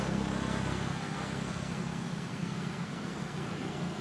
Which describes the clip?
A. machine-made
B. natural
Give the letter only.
A